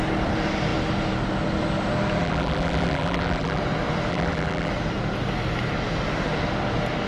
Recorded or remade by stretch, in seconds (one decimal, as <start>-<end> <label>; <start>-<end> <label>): 0.0-2.2 recorded; 2.2-3.6 remade; 3.6-4.1 recorded; 4.1-4.7 remade; 4.7-7.1 recorded